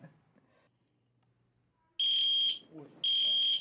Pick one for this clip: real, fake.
real